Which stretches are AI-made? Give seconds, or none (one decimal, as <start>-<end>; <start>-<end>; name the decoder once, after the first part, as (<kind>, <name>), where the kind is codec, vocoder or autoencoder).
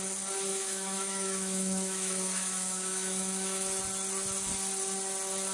0.5-3.8 (autoencoder, DAC-VAE)